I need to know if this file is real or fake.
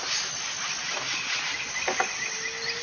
real